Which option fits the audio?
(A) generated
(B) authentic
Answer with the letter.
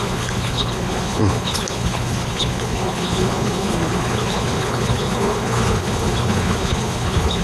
A